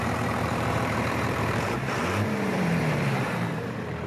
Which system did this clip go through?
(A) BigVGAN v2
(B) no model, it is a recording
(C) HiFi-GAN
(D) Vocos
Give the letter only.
A